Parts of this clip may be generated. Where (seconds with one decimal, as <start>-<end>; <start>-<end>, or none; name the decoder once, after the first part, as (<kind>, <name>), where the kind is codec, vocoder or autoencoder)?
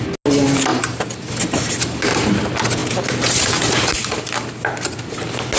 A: none